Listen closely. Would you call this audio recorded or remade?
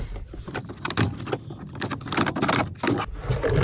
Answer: recorded